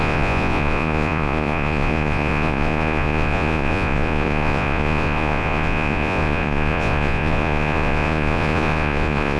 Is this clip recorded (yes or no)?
no